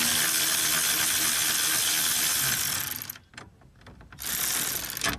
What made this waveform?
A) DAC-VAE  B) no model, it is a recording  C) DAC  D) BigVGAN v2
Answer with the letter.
B